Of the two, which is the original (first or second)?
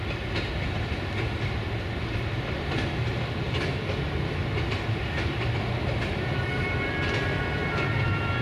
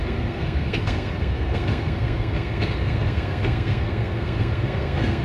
first